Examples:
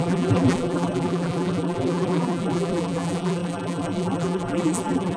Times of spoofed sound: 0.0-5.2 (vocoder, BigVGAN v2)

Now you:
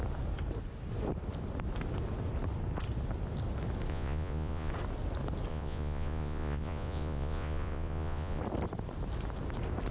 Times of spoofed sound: 3.9-4.7 (vocoder, Vocos); 5.5-8.4

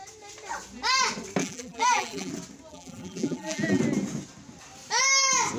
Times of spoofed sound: 1.4-2.3 (vocoder, BigVGAN v2); 2.7-3.8

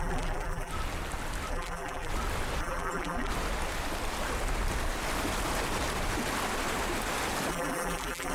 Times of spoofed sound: 0.0-0.7 (vocoder, BigVGAN v2); 1.5-2.1; 2.6-3.3; 7.5-8.3